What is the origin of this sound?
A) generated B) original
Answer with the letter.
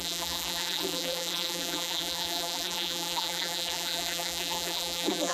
A